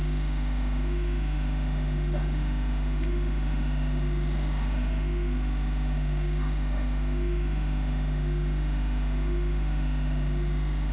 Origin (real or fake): fake